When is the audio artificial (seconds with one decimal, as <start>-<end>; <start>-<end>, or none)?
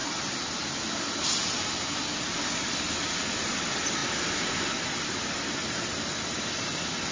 none